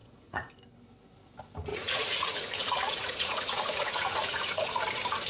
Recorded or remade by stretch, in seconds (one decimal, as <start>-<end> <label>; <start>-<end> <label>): 0.0-0.5 remade; 0.5-1.7 recorded; 1.7-4.8 remade; 4.8-5.3 recorded